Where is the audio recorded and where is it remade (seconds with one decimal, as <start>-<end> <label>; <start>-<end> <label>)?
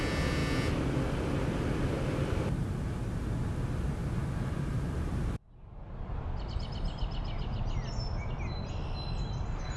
0.0-9.8 recorded